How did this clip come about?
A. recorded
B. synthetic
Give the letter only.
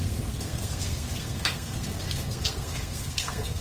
B